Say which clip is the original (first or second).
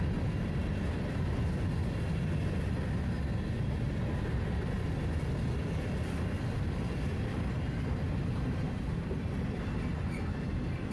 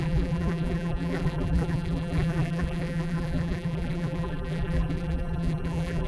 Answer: first